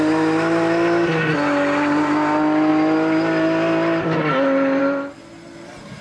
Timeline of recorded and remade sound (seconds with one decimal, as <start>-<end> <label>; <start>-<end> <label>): 0.0-6.0 recorded